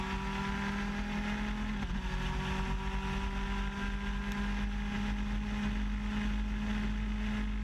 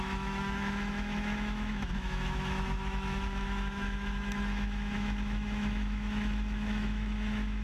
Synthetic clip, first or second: second